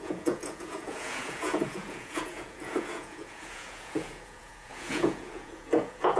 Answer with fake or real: fake